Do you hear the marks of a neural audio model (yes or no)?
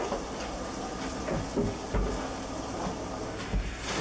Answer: no